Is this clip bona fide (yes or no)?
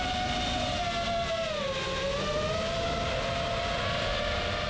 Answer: yes